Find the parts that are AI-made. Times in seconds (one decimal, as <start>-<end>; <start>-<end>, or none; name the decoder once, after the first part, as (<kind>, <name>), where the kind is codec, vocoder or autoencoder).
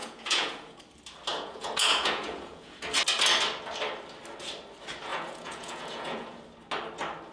0.0-0.8 (vocoder, Vocos); 1.3-2.8; 5.1-6.4